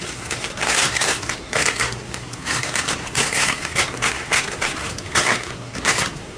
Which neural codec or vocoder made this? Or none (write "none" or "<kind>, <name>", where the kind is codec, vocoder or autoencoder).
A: codec, SNAC